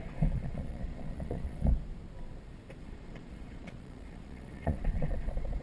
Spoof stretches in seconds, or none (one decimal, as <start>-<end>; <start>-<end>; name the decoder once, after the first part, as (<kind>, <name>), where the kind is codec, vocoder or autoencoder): 0.0-1.7 (vocoder, Vocos); 2.8-5.6